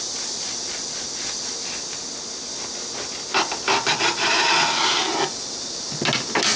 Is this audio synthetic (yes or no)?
no